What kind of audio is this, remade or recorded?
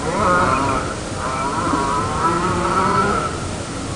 recorded